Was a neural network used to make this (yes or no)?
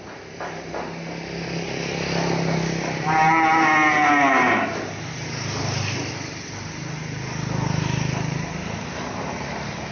no